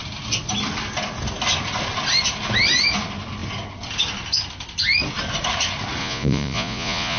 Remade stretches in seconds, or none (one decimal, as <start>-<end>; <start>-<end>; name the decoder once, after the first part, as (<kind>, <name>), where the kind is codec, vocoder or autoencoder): 6.0-7.2 (vocoder, Vocos)

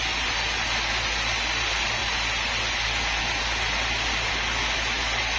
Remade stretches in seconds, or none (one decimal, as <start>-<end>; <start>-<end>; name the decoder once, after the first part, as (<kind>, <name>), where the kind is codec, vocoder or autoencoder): none

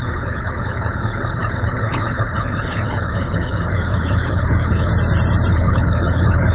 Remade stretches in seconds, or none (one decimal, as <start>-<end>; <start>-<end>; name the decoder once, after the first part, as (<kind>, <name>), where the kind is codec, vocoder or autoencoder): 0.0-4.9 (codec, HILCodec); 5.5-6.5